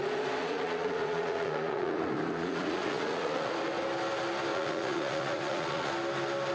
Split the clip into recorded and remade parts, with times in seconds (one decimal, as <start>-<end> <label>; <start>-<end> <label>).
0.0-0.4 recorded; 0.4-3.5 remade; 3.5-4.5 recorded; 4.5-5.9 remade; 5.9-6.5 recorded